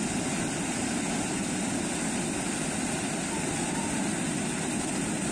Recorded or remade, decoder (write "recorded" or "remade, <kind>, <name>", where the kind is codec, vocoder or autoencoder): recorded